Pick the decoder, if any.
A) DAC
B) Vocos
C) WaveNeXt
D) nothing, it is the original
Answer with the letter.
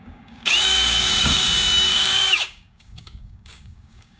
A